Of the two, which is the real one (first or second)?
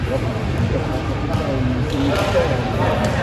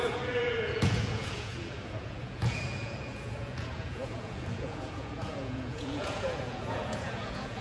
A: first